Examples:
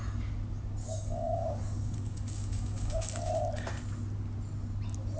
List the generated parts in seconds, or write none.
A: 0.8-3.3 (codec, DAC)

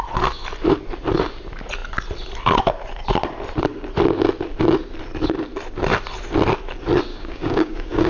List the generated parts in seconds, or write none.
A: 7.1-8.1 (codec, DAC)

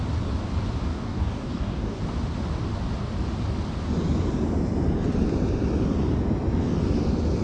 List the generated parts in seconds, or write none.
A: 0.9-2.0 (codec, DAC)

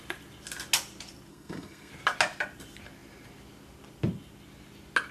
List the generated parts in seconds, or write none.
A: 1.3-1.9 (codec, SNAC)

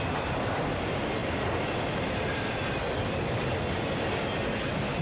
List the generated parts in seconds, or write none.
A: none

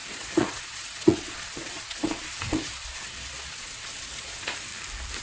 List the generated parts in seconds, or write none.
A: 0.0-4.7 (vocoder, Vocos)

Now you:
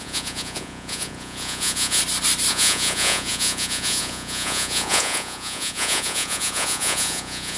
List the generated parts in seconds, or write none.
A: 0.0-2.0 (vocoder, Vocos); 2.5-7.6